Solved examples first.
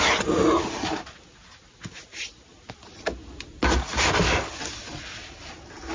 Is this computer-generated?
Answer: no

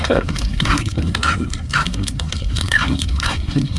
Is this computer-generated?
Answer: yes